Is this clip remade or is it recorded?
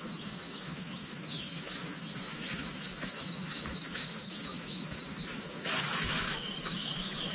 remade